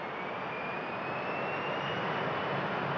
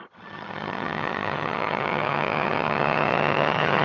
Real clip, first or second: first